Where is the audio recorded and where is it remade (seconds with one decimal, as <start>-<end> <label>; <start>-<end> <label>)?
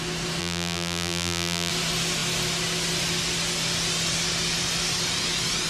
0.0-0.4 recorded; 0.4-1.7 remade; 1.7-5.7 recorded